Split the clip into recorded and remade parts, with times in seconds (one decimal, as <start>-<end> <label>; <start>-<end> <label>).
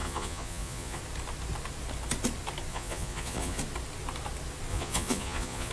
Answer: 0.0-1.0 remade; 1.0-2.7 recorded; 2.7-3.6 remade; 3.6-4.7 recorded; 4.7-5.7 remade